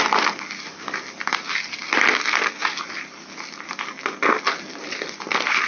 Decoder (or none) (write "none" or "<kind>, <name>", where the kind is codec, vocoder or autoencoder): none